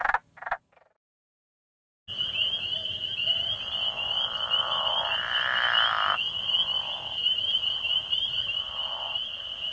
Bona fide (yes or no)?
yes